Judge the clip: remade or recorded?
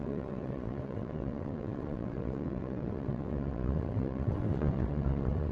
remade